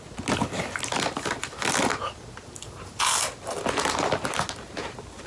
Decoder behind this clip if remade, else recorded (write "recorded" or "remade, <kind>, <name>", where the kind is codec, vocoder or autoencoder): recorded